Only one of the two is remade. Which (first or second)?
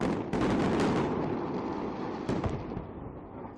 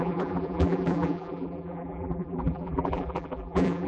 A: second